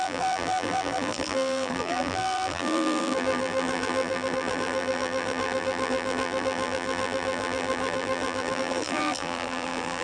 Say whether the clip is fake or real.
fake